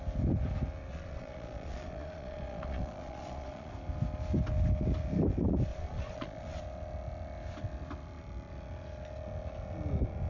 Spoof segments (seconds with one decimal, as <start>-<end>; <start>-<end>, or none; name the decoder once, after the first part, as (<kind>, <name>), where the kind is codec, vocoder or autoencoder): 0.9-3.7 (vocoder, Vocos); 5.7-6.6